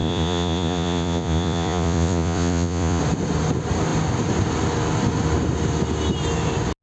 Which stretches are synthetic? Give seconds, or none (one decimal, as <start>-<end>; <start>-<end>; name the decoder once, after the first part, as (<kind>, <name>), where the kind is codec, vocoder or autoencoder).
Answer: 0.0-3.0 (vocoder, Vocos)